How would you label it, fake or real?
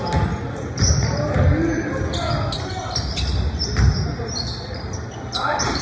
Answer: real